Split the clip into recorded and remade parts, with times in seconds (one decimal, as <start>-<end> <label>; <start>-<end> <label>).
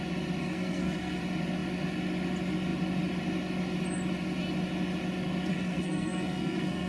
0.0-0.4 recorded; 0.4-1.2 remade; 1.2-5.5 recorded; 5.5-6.9 remade